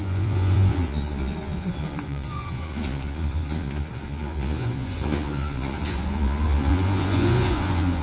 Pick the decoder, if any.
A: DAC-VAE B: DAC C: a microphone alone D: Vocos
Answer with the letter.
D